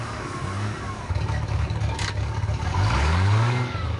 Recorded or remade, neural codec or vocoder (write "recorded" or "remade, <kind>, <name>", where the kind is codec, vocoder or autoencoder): remade, codec, DAC